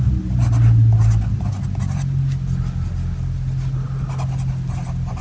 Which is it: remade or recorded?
recorded